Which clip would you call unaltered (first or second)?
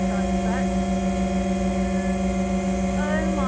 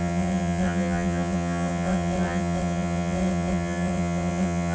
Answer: first